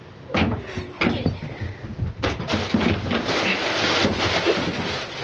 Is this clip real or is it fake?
real